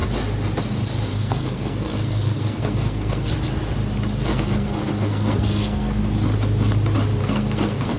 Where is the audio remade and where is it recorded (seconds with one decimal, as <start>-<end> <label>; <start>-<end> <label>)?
0.0-1.1 recorded; 1.1-3.3 remade; 3.3-4.3 recorded; 4.3-6.0 remade; 6.0-7.2 recorded; 7.2-8.0 remade